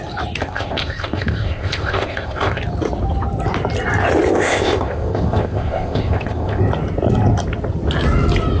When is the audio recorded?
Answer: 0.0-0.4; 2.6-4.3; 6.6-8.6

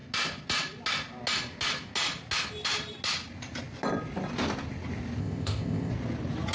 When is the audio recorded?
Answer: 0.0-5.2; 5.9-6.5

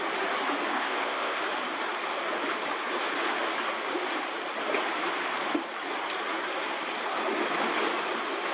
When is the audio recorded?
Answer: 0.0-0.7; 1.4-8.5

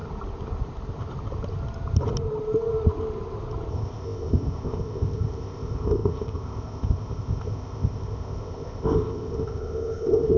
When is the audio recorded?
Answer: 0.0-3.7

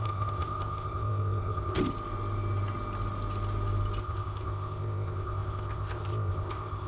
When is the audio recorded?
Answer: 1.8-4.0

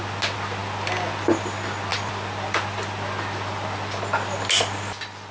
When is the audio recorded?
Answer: 0.0-5.3

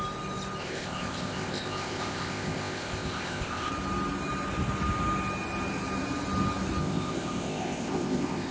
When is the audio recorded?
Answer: 0.0-0.6; 3.7-6.8

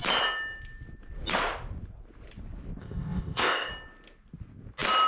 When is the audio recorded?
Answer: 0.0-2.8; 3.7-5.1